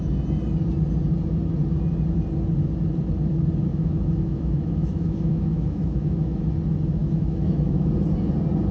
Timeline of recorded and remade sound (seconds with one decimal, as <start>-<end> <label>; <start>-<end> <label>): 0.0-3.7 recorded; 3.7-6.5 remade; 6.5-7.0 recorded; 7.0-7.9 remade; 7.9-8.7 recorded